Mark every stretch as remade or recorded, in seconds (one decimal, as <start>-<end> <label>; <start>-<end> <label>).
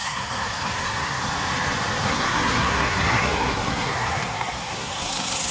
0.0-1.2 remade; 1.2-2.0 recorded; 2.0-5.5 remade